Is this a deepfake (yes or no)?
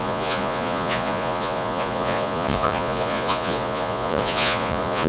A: yes